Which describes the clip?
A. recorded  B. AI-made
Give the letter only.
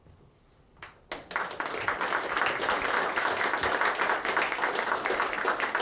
A